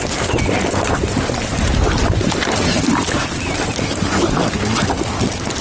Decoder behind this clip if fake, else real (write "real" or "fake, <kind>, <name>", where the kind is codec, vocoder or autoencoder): real